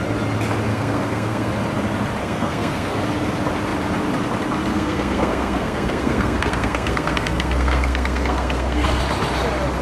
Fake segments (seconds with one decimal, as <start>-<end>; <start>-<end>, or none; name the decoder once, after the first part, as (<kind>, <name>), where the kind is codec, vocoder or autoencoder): 0.7-1.5 (codec, SNAC); 2.2-3.0; 4.7-9.0